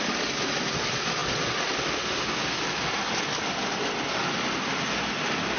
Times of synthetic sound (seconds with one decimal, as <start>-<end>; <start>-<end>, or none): none